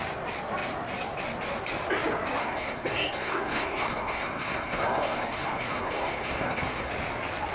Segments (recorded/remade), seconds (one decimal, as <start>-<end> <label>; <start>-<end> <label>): 0.0-2.4 recorded; 2.4-6.9 remade; 6.9-7.5 recorded

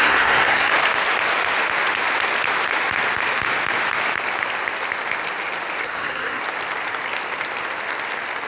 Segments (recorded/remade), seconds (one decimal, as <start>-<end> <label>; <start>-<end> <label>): 0.0-0.7 remade; 0.7-5.8 recorded; 5.8-6.4 remade; 6.4-8.5 recorded

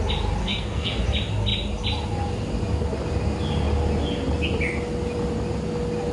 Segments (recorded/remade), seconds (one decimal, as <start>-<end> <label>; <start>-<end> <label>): 0.0-0.4 recorded; 0.4-1.0 remade; 1.0-6.1 recorded

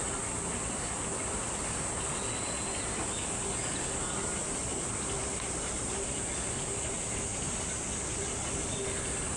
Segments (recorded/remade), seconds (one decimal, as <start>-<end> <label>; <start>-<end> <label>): 0.0-9.4 recorded

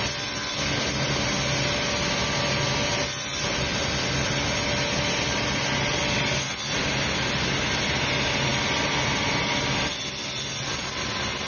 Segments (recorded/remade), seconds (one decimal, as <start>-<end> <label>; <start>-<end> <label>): 0.0-11.5 recorded